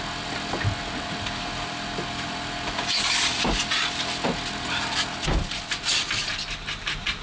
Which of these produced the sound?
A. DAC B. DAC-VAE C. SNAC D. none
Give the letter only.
D